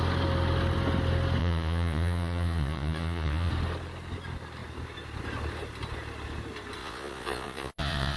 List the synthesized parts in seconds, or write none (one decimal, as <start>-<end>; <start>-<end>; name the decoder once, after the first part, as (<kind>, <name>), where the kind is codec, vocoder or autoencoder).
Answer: 1.4-3.5 (vocoder, Vocos); 6.8-8.2